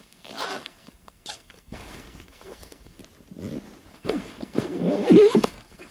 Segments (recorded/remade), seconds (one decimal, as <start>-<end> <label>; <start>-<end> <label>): 0.0-3.0 remade; 3.0-3.9 recorded; 3.9-5.9 remade